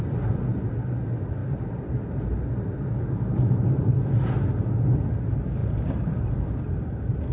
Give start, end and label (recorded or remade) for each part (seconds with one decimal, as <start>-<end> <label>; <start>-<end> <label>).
0.0-1.4 recorded; 1.4-4.3 remade; 4.3-5.6 recorded; 5.6-6.2 remade; 6.2-7.3 recorded